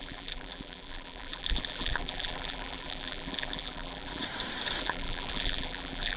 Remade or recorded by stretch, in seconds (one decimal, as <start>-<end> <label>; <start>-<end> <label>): 0.0-4.2 remade; 4.2-4.8 recorded; 4.8-6.2 remade